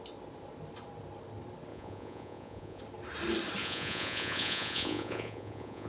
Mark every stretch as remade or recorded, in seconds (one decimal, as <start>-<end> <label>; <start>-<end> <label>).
0.0-1.7 recorded; 1.7-2.8 remade; 2.8-3.6 recorded; 3.6-5.9 remade